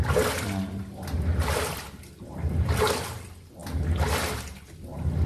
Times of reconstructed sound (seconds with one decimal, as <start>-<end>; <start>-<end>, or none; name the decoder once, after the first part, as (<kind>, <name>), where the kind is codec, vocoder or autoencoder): none